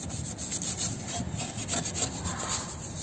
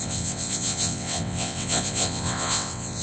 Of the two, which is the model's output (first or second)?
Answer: second